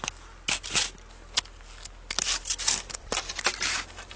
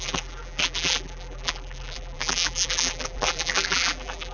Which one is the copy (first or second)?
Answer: second